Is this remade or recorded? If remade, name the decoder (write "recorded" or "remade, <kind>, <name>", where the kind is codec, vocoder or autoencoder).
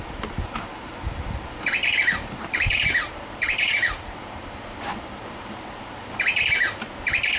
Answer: remade, vocoder, BigVGAN v2